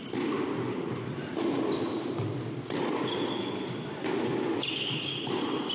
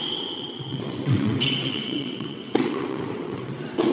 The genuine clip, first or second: first